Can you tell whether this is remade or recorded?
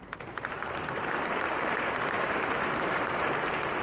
remade